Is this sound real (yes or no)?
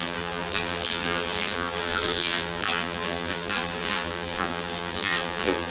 no